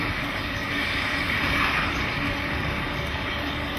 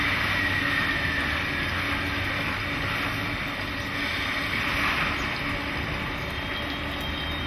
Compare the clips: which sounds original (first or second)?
second